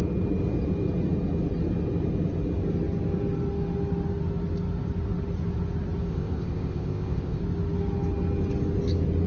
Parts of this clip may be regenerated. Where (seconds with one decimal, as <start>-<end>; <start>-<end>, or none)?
6.1-7.4